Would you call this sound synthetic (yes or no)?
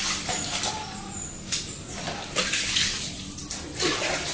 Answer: no